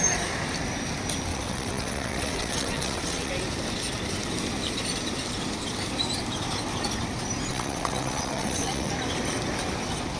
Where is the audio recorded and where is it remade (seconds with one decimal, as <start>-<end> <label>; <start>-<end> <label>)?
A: 0.0-1.3 recorded; 1.3-3.3 remade; 3.3-7.5 recorded; 7.5-8.9 remade; 8.9-10.2 recorded